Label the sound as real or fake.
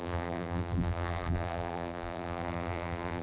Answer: fake